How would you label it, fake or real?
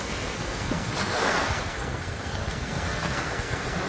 fake